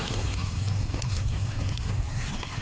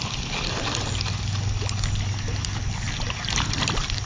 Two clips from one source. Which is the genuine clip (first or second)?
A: second